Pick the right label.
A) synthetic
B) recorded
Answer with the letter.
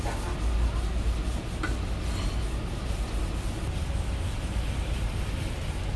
B